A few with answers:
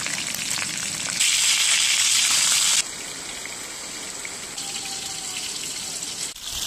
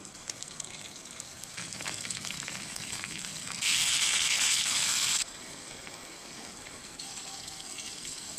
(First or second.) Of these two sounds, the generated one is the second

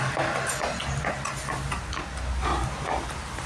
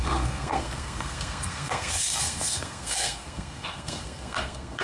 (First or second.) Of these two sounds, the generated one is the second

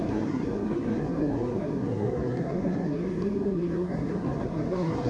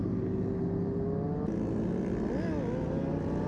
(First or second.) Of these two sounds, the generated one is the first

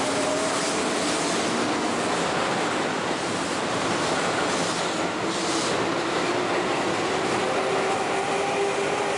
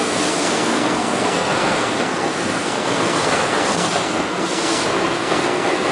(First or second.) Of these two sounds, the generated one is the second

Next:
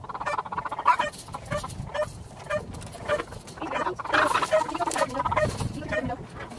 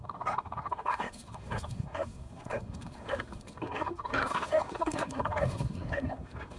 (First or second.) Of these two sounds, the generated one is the second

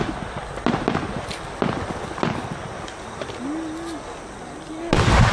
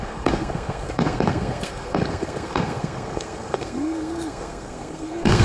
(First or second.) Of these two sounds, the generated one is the second